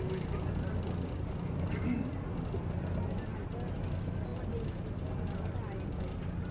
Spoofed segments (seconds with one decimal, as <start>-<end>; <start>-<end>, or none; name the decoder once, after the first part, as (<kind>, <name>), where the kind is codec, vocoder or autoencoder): none